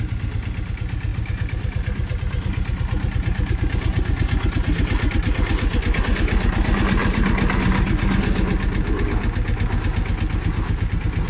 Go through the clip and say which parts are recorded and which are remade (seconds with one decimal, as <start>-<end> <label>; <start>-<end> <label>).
0.0-11.3 recorded